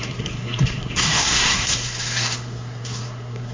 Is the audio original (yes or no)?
no